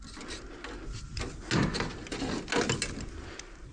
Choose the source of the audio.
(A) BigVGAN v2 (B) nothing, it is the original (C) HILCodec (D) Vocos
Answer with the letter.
B